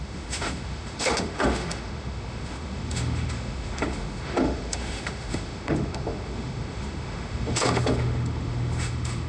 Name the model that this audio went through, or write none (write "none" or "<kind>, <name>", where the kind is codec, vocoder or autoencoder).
autoencoder, DAC-VAE